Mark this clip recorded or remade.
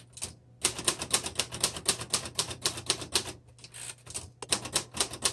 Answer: recorded